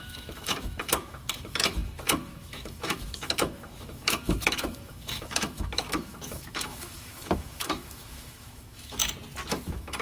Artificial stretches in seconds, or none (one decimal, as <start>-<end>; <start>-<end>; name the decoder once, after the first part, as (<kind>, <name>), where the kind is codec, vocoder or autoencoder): 0.0-9.0 (autoencoder, DAC-VAE); 9.5-10.0